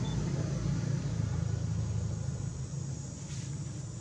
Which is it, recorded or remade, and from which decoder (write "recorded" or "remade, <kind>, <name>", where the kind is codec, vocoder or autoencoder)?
recorded